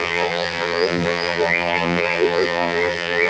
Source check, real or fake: fake